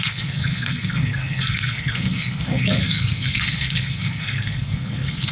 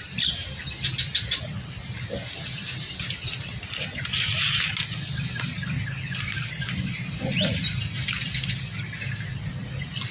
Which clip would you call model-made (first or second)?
first